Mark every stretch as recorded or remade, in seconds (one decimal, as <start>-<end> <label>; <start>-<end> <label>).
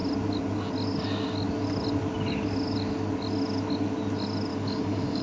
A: 0.0-4.5 recorded; 4.5-5.2 remade